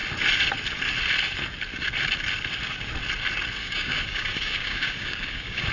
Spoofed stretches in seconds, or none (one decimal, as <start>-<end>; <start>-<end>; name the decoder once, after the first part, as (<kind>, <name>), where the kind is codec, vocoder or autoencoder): 3.6-5.7 (codec, DAC)